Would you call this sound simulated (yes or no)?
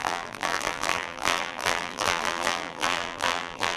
yes